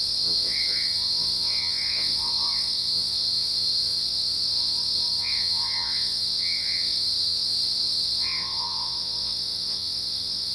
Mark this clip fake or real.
fake